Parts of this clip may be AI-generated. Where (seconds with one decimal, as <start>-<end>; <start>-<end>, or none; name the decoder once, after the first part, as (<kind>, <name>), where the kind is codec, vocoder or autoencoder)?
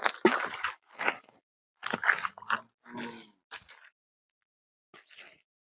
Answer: none